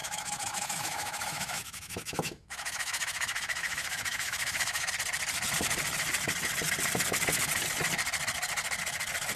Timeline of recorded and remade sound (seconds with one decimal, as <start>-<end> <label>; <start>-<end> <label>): 0.0-4.9 remade; 4.9-9.4 recorded